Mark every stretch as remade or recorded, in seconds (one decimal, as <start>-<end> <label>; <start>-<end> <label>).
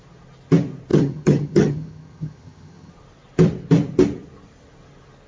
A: 0.0-0.9 recorded; 0.9-2.9 remade; 2.9-5.3 recorded